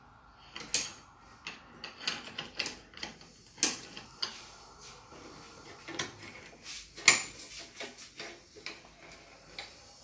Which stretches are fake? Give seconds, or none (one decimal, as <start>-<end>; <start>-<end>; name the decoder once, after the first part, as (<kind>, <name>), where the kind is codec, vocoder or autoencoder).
none